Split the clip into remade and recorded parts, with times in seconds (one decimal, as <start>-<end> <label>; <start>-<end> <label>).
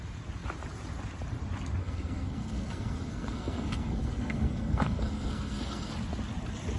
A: 0.0-1.8 recorded; 1.8-5.9 remade; 5.9-6.8 recorded